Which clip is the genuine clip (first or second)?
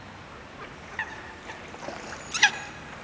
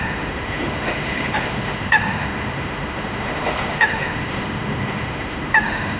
first